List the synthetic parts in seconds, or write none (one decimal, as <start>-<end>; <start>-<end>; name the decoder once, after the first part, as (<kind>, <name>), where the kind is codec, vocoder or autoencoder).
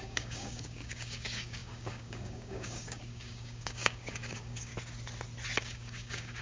0.0-4.7 (codec, DAC); 5.6-6.4